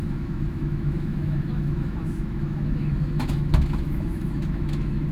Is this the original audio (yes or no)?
no